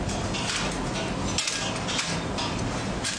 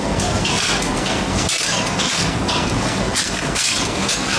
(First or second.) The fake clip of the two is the second